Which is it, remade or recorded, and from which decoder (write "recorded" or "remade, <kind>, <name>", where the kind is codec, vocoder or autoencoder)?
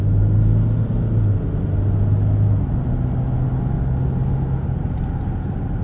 recorded